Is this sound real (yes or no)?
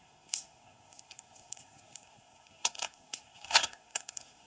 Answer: no